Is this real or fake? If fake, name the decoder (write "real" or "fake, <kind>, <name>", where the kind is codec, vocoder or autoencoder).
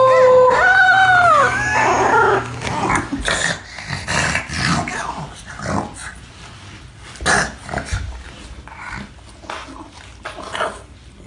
real